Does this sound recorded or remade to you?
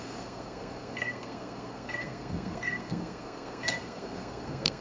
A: remade